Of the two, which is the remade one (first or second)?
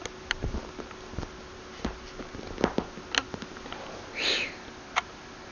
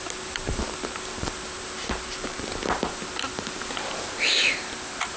second